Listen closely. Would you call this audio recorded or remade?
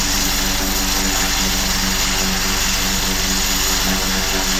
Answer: recorded